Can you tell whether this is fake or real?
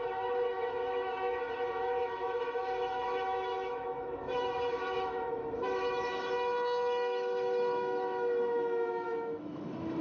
fake